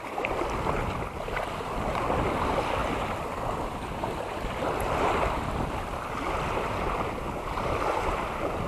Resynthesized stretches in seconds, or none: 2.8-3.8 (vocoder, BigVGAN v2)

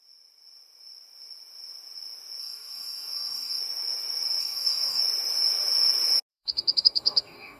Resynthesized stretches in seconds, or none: 2.4-3.6 (codec, DAC); 4.4-5.0; 6.3-7.6

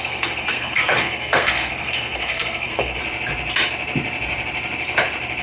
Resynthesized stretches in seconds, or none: 0.0-3.0 (codec, SNAC)

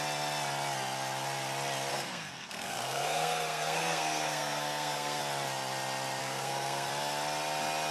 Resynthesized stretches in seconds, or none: 1.9-5.2 (codec, SNAC); 6.2-6.9

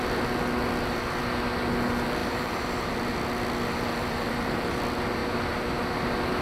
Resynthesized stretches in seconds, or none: 2.2-2.9 (vocoder, BigVGAN v2); 4.0-4.8